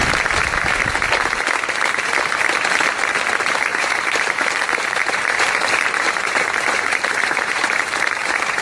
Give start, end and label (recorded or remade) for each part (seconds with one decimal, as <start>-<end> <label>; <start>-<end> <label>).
0.0-3.7 recorded; 3.7-8.6 remade